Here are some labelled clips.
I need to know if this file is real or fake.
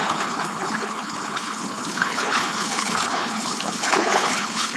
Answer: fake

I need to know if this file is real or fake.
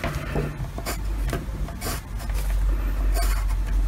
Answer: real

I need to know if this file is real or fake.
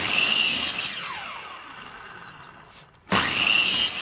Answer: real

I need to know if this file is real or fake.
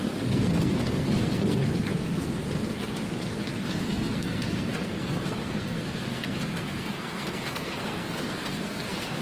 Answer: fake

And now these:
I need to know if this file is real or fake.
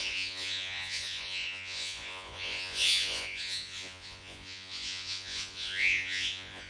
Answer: fake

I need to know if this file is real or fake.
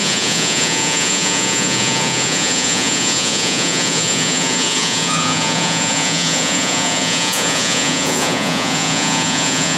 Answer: fake